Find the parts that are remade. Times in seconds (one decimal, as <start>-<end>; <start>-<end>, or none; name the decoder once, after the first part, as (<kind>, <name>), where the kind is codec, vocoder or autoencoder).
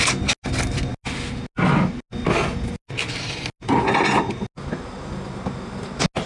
none